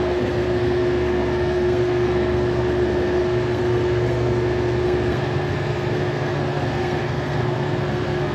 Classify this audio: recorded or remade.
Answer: remade